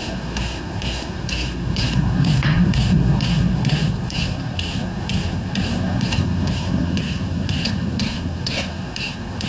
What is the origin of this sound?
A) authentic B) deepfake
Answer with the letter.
B